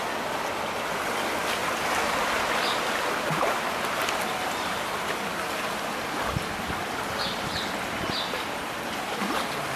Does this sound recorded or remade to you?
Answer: recorded